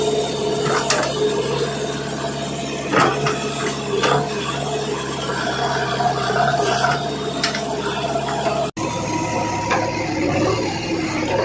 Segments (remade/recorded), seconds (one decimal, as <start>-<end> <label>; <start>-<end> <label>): 0.0-11.4 recorded